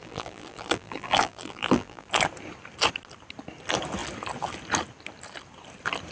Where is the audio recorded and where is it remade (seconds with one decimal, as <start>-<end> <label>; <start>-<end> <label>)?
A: 0.0-2.1 remade; 2.1-6.1 recorded